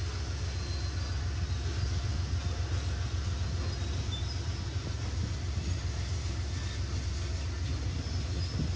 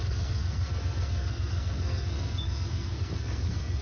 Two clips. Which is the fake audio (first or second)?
second